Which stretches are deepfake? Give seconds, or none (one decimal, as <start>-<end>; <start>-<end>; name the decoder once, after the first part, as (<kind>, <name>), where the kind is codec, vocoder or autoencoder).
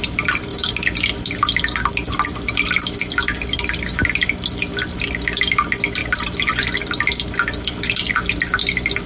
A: none